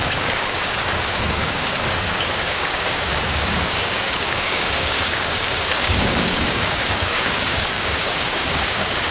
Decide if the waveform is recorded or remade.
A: remade